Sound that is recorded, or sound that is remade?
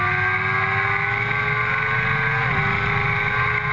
recorded